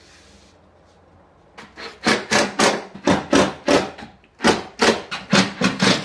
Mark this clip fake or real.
real